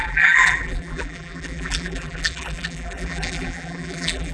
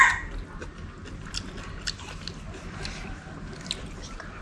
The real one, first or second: second